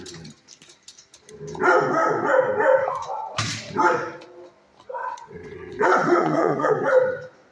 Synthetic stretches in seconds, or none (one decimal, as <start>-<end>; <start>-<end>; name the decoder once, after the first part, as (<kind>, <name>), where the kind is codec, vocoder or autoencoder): 5.0-6.7 (vocoder, WaveNeXt)